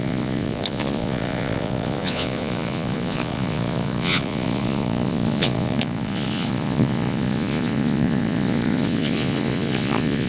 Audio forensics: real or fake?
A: fake